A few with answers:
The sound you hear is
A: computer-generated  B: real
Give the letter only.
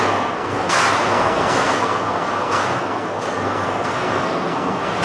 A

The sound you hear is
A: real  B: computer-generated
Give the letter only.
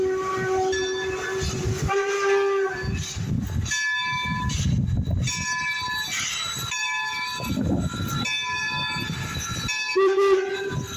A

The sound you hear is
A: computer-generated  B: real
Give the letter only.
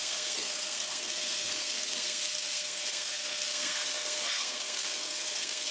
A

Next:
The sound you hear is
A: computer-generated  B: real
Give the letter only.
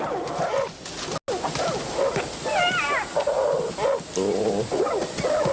B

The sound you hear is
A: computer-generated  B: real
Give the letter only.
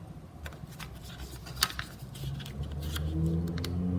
B